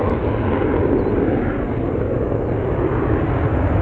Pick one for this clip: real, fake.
real